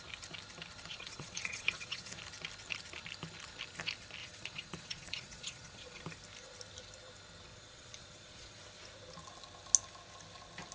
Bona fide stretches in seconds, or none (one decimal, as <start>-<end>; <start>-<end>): 0.0-0.9; 2.2-4.2; 6.0-7.5; 8.6-10.7